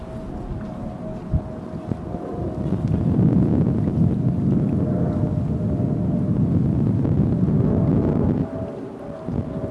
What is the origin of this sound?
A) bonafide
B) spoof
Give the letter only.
A